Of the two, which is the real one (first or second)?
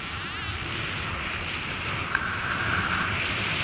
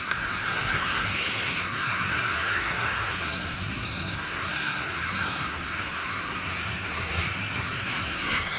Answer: first